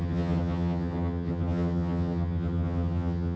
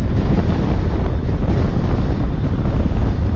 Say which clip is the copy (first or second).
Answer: first